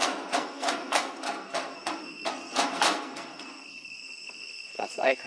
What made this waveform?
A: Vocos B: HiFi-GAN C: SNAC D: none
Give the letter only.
C